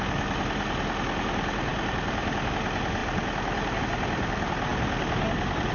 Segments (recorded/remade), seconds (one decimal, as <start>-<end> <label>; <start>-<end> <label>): 0.0-5.7 recorded